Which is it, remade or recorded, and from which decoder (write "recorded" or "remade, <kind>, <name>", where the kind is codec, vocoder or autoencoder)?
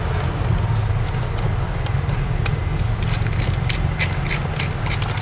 recorded